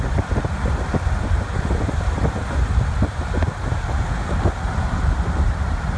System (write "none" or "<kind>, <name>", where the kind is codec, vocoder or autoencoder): none